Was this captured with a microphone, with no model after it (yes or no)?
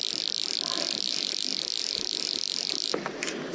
yes